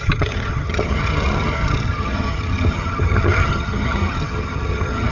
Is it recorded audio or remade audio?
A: remade